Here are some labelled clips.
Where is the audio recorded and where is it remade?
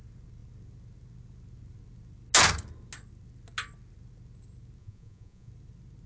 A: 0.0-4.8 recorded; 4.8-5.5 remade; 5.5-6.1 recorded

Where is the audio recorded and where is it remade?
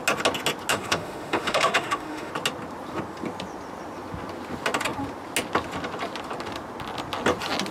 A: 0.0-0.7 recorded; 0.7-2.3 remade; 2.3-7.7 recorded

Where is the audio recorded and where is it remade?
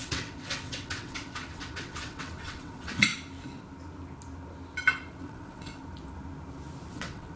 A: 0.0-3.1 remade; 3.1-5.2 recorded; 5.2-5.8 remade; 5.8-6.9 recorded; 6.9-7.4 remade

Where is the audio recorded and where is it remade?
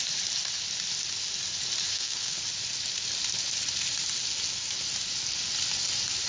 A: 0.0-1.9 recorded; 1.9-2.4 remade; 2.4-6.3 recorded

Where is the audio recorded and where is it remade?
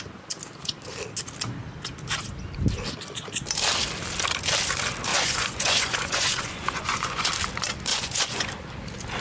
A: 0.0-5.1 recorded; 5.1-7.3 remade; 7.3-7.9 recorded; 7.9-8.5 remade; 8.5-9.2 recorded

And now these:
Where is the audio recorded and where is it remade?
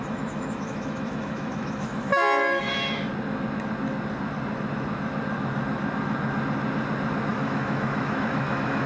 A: 0.0-2.1 remade; 2.1-2.6 recorded; 2.6-3.1 remade; 3.1-7.3 recorded; 7.3-8.9 remade